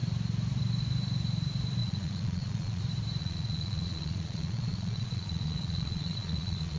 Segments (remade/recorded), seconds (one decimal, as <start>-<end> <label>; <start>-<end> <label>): 0.0-1.8 recorded; 1.8-2.8 remade; 2.8-3.2 recorded; 3.2-6.8 remade